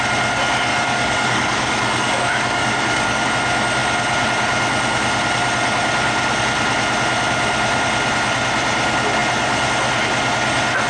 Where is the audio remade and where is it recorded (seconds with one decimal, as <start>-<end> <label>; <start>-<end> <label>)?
0.0-0.7 recorded; 0.7-3.3 remade; 3.3-10.9 recorded